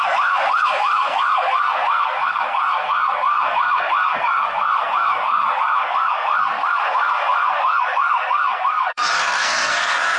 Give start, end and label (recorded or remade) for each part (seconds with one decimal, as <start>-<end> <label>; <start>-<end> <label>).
0.0-10.2 remade

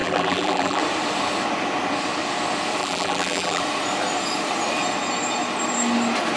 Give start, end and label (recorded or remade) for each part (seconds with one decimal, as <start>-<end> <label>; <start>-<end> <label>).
0.0-0.8 remade; 0.8-2.8 recorded; 2.8-3.6 remade; 3.6-6.4 recorded

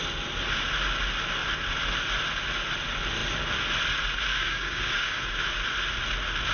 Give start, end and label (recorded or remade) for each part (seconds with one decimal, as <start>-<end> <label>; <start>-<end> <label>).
0.0-4.3 recorded; 4.3-5.3 remade; 5.3-6.5 recorded

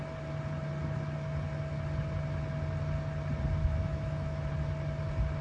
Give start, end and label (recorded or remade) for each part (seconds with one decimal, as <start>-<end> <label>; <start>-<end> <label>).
0.0-3.6 recorded; 3.6-4.5 remade; 4.5-5.4 recorded